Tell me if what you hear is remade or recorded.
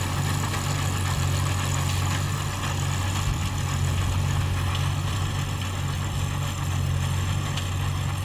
recorded